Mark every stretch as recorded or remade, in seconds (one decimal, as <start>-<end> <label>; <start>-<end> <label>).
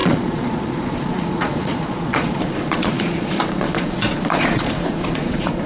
0.0-5.7 remade